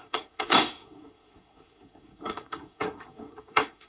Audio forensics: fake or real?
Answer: fake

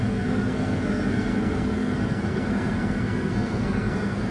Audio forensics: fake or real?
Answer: fake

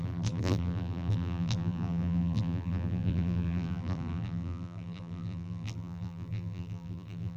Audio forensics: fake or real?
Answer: fake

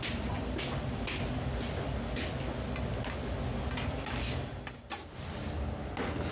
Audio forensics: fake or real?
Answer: real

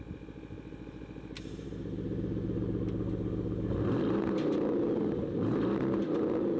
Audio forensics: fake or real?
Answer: real